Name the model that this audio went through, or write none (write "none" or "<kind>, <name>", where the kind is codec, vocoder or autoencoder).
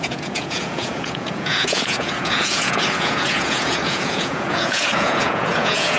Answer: vocoder, Vocos